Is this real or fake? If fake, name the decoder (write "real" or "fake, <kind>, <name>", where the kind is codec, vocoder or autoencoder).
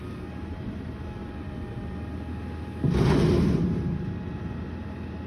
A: real